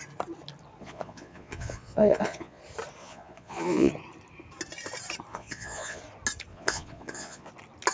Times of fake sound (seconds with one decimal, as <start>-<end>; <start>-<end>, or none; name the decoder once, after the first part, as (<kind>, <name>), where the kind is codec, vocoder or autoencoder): 0.8-2.6 (vocoder, Vocos); 3.0-3.9; 5.3-6.0; 6.5-7.5